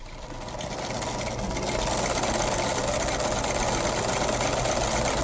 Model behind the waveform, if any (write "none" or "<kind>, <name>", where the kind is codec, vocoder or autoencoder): none